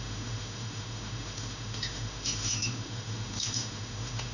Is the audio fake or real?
fake